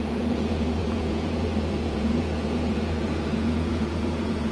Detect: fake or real fake